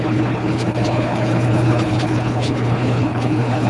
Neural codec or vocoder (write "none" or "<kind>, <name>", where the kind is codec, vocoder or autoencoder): codec, HILCodec